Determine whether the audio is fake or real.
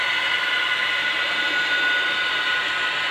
real